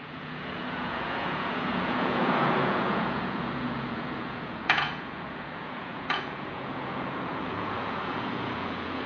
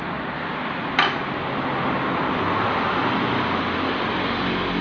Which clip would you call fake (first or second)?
first